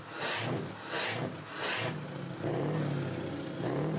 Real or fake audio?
real